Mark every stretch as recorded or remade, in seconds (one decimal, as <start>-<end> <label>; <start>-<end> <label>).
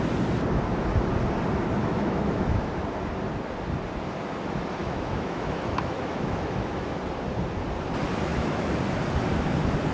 0.0-1.8 recorded; 1.8-2.7 remade; 2.7-4.8 recorded; 4.8-7.0 remade; 7.0-8.3 recorded; 8.3-8.8 remade; 8.8-9.9 recorded